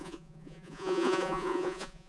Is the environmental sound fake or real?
fake